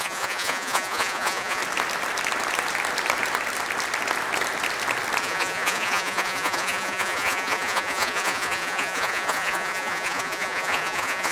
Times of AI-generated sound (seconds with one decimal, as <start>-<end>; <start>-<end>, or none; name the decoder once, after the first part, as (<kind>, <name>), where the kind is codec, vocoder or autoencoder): 0.0-1.6 (vocoder, Vocos); 5.2-11.3